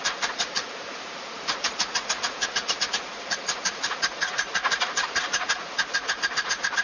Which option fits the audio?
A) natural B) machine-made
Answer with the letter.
B